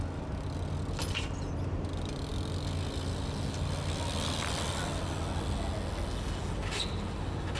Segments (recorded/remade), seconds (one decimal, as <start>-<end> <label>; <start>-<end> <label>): 0.0-7.6 recorded